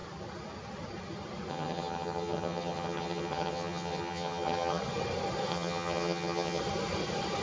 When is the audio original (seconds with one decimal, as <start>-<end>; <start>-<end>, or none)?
0.0-1.5; 4.8-5.5; 6.6-7.4